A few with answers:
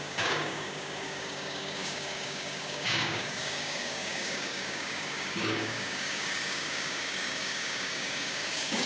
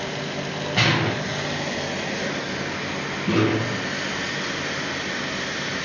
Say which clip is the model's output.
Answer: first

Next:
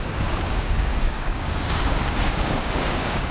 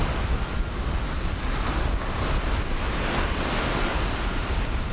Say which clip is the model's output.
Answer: first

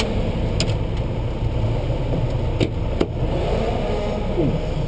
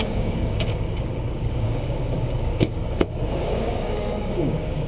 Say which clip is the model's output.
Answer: second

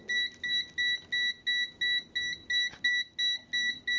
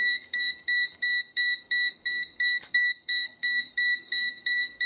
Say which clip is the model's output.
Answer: second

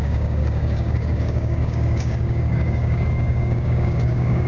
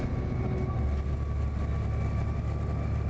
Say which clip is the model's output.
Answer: first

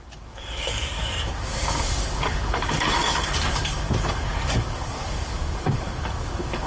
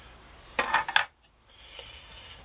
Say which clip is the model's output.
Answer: first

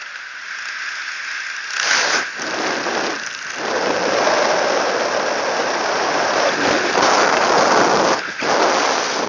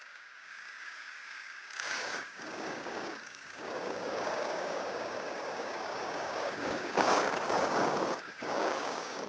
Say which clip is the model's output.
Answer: second